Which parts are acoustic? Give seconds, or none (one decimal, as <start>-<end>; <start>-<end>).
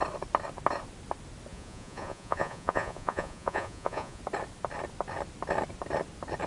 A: 0.0-1.5; 4.2-6.5